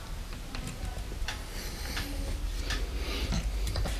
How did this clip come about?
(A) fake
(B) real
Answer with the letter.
B